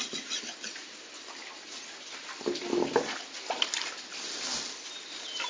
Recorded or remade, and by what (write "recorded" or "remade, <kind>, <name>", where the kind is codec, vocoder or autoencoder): recorded